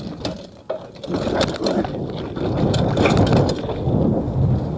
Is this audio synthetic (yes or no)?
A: no